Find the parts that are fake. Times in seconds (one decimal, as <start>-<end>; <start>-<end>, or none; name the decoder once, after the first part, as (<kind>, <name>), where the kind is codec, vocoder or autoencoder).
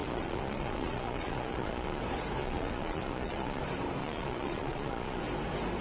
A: 0.0-2.0 (vocoder, Vocos); 2.4-3.6; 4.0-5.2